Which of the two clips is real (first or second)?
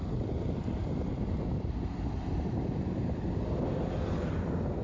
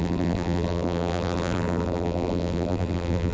first